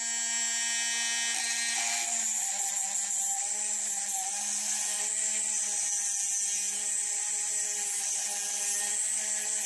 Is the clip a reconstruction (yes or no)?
no